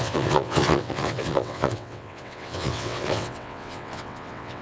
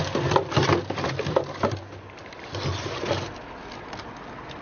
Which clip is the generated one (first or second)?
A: first